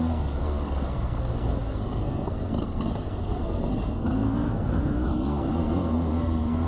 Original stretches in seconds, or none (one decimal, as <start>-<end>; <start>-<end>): none